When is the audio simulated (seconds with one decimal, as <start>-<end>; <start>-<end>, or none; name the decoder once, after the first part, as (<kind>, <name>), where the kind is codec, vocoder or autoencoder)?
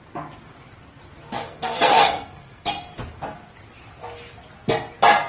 1.3-2.7 (codec, SNAC)